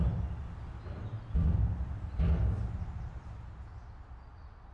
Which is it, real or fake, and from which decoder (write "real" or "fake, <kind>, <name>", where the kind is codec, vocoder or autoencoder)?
real